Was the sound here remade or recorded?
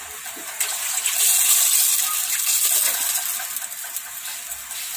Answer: recorded